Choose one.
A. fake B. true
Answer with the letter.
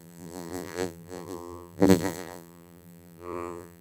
A